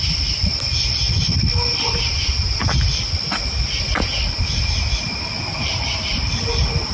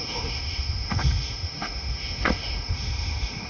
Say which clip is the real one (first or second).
first